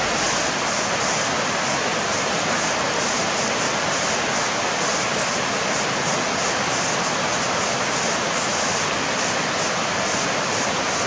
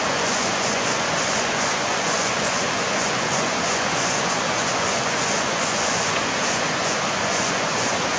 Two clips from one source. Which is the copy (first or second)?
second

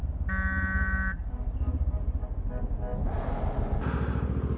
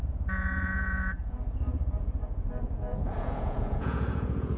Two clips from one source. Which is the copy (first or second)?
second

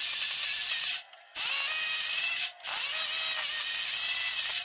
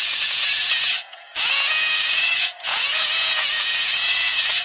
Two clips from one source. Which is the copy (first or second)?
second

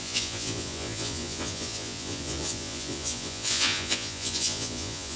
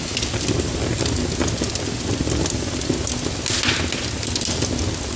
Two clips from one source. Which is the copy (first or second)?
first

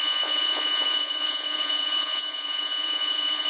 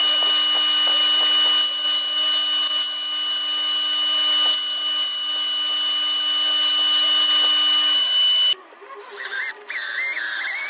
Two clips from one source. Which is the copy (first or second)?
first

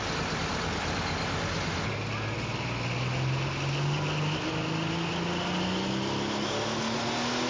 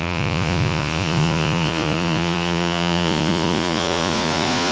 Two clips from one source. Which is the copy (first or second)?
second